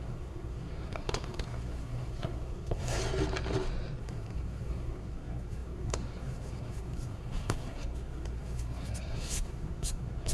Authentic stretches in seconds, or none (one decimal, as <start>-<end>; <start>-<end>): 3.0-4.0